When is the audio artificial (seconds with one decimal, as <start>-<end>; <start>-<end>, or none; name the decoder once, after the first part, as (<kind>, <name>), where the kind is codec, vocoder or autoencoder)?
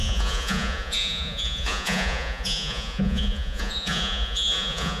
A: 0.0-5.0 (vocoder, Vocos)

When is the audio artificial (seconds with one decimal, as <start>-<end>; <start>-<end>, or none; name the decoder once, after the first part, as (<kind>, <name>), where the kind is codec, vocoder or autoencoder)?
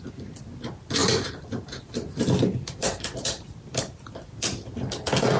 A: 1.0-4.2 (vocoder, BigVGAN v2)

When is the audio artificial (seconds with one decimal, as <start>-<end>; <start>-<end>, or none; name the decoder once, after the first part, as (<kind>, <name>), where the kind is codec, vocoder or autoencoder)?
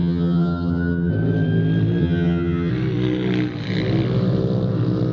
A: 0.0-1.1 (vocoder, HiFi-GAN); 2.0-2.7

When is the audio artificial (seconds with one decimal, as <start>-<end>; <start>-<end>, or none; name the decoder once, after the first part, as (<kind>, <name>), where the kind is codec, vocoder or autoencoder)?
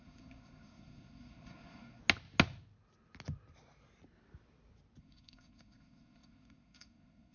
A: 0.0-2.0 (codec, SNAC); 5.0-7.3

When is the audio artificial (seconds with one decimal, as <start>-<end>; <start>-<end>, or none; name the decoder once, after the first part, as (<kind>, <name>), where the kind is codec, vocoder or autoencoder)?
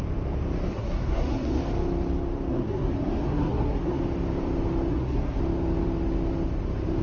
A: 0.6-1.6 (codec, SNAC); 2.5-4.0; 4.9-5.4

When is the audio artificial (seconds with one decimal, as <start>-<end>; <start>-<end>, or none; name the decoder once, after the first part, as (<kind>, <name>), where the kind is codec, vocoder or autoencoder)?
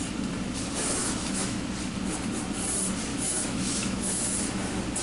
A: 1.0-1.6 (autoencoder, DAC-VAE); 3.1-4.6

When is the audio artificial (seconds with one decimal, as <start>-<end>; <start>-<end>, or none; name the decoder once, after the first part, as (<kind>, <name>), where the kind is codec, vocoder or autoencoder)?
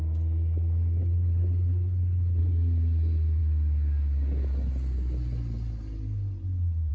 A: 1.0-2.4 (codec, HILCodec)